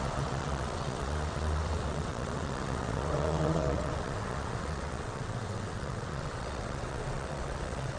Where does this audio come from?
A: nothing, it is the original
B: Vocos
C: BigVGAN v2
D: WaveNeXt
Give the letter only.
D